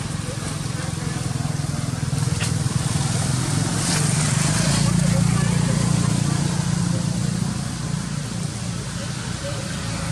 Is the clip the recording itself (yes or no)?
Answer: yes